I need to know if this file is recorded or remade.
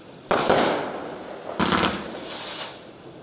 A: recorded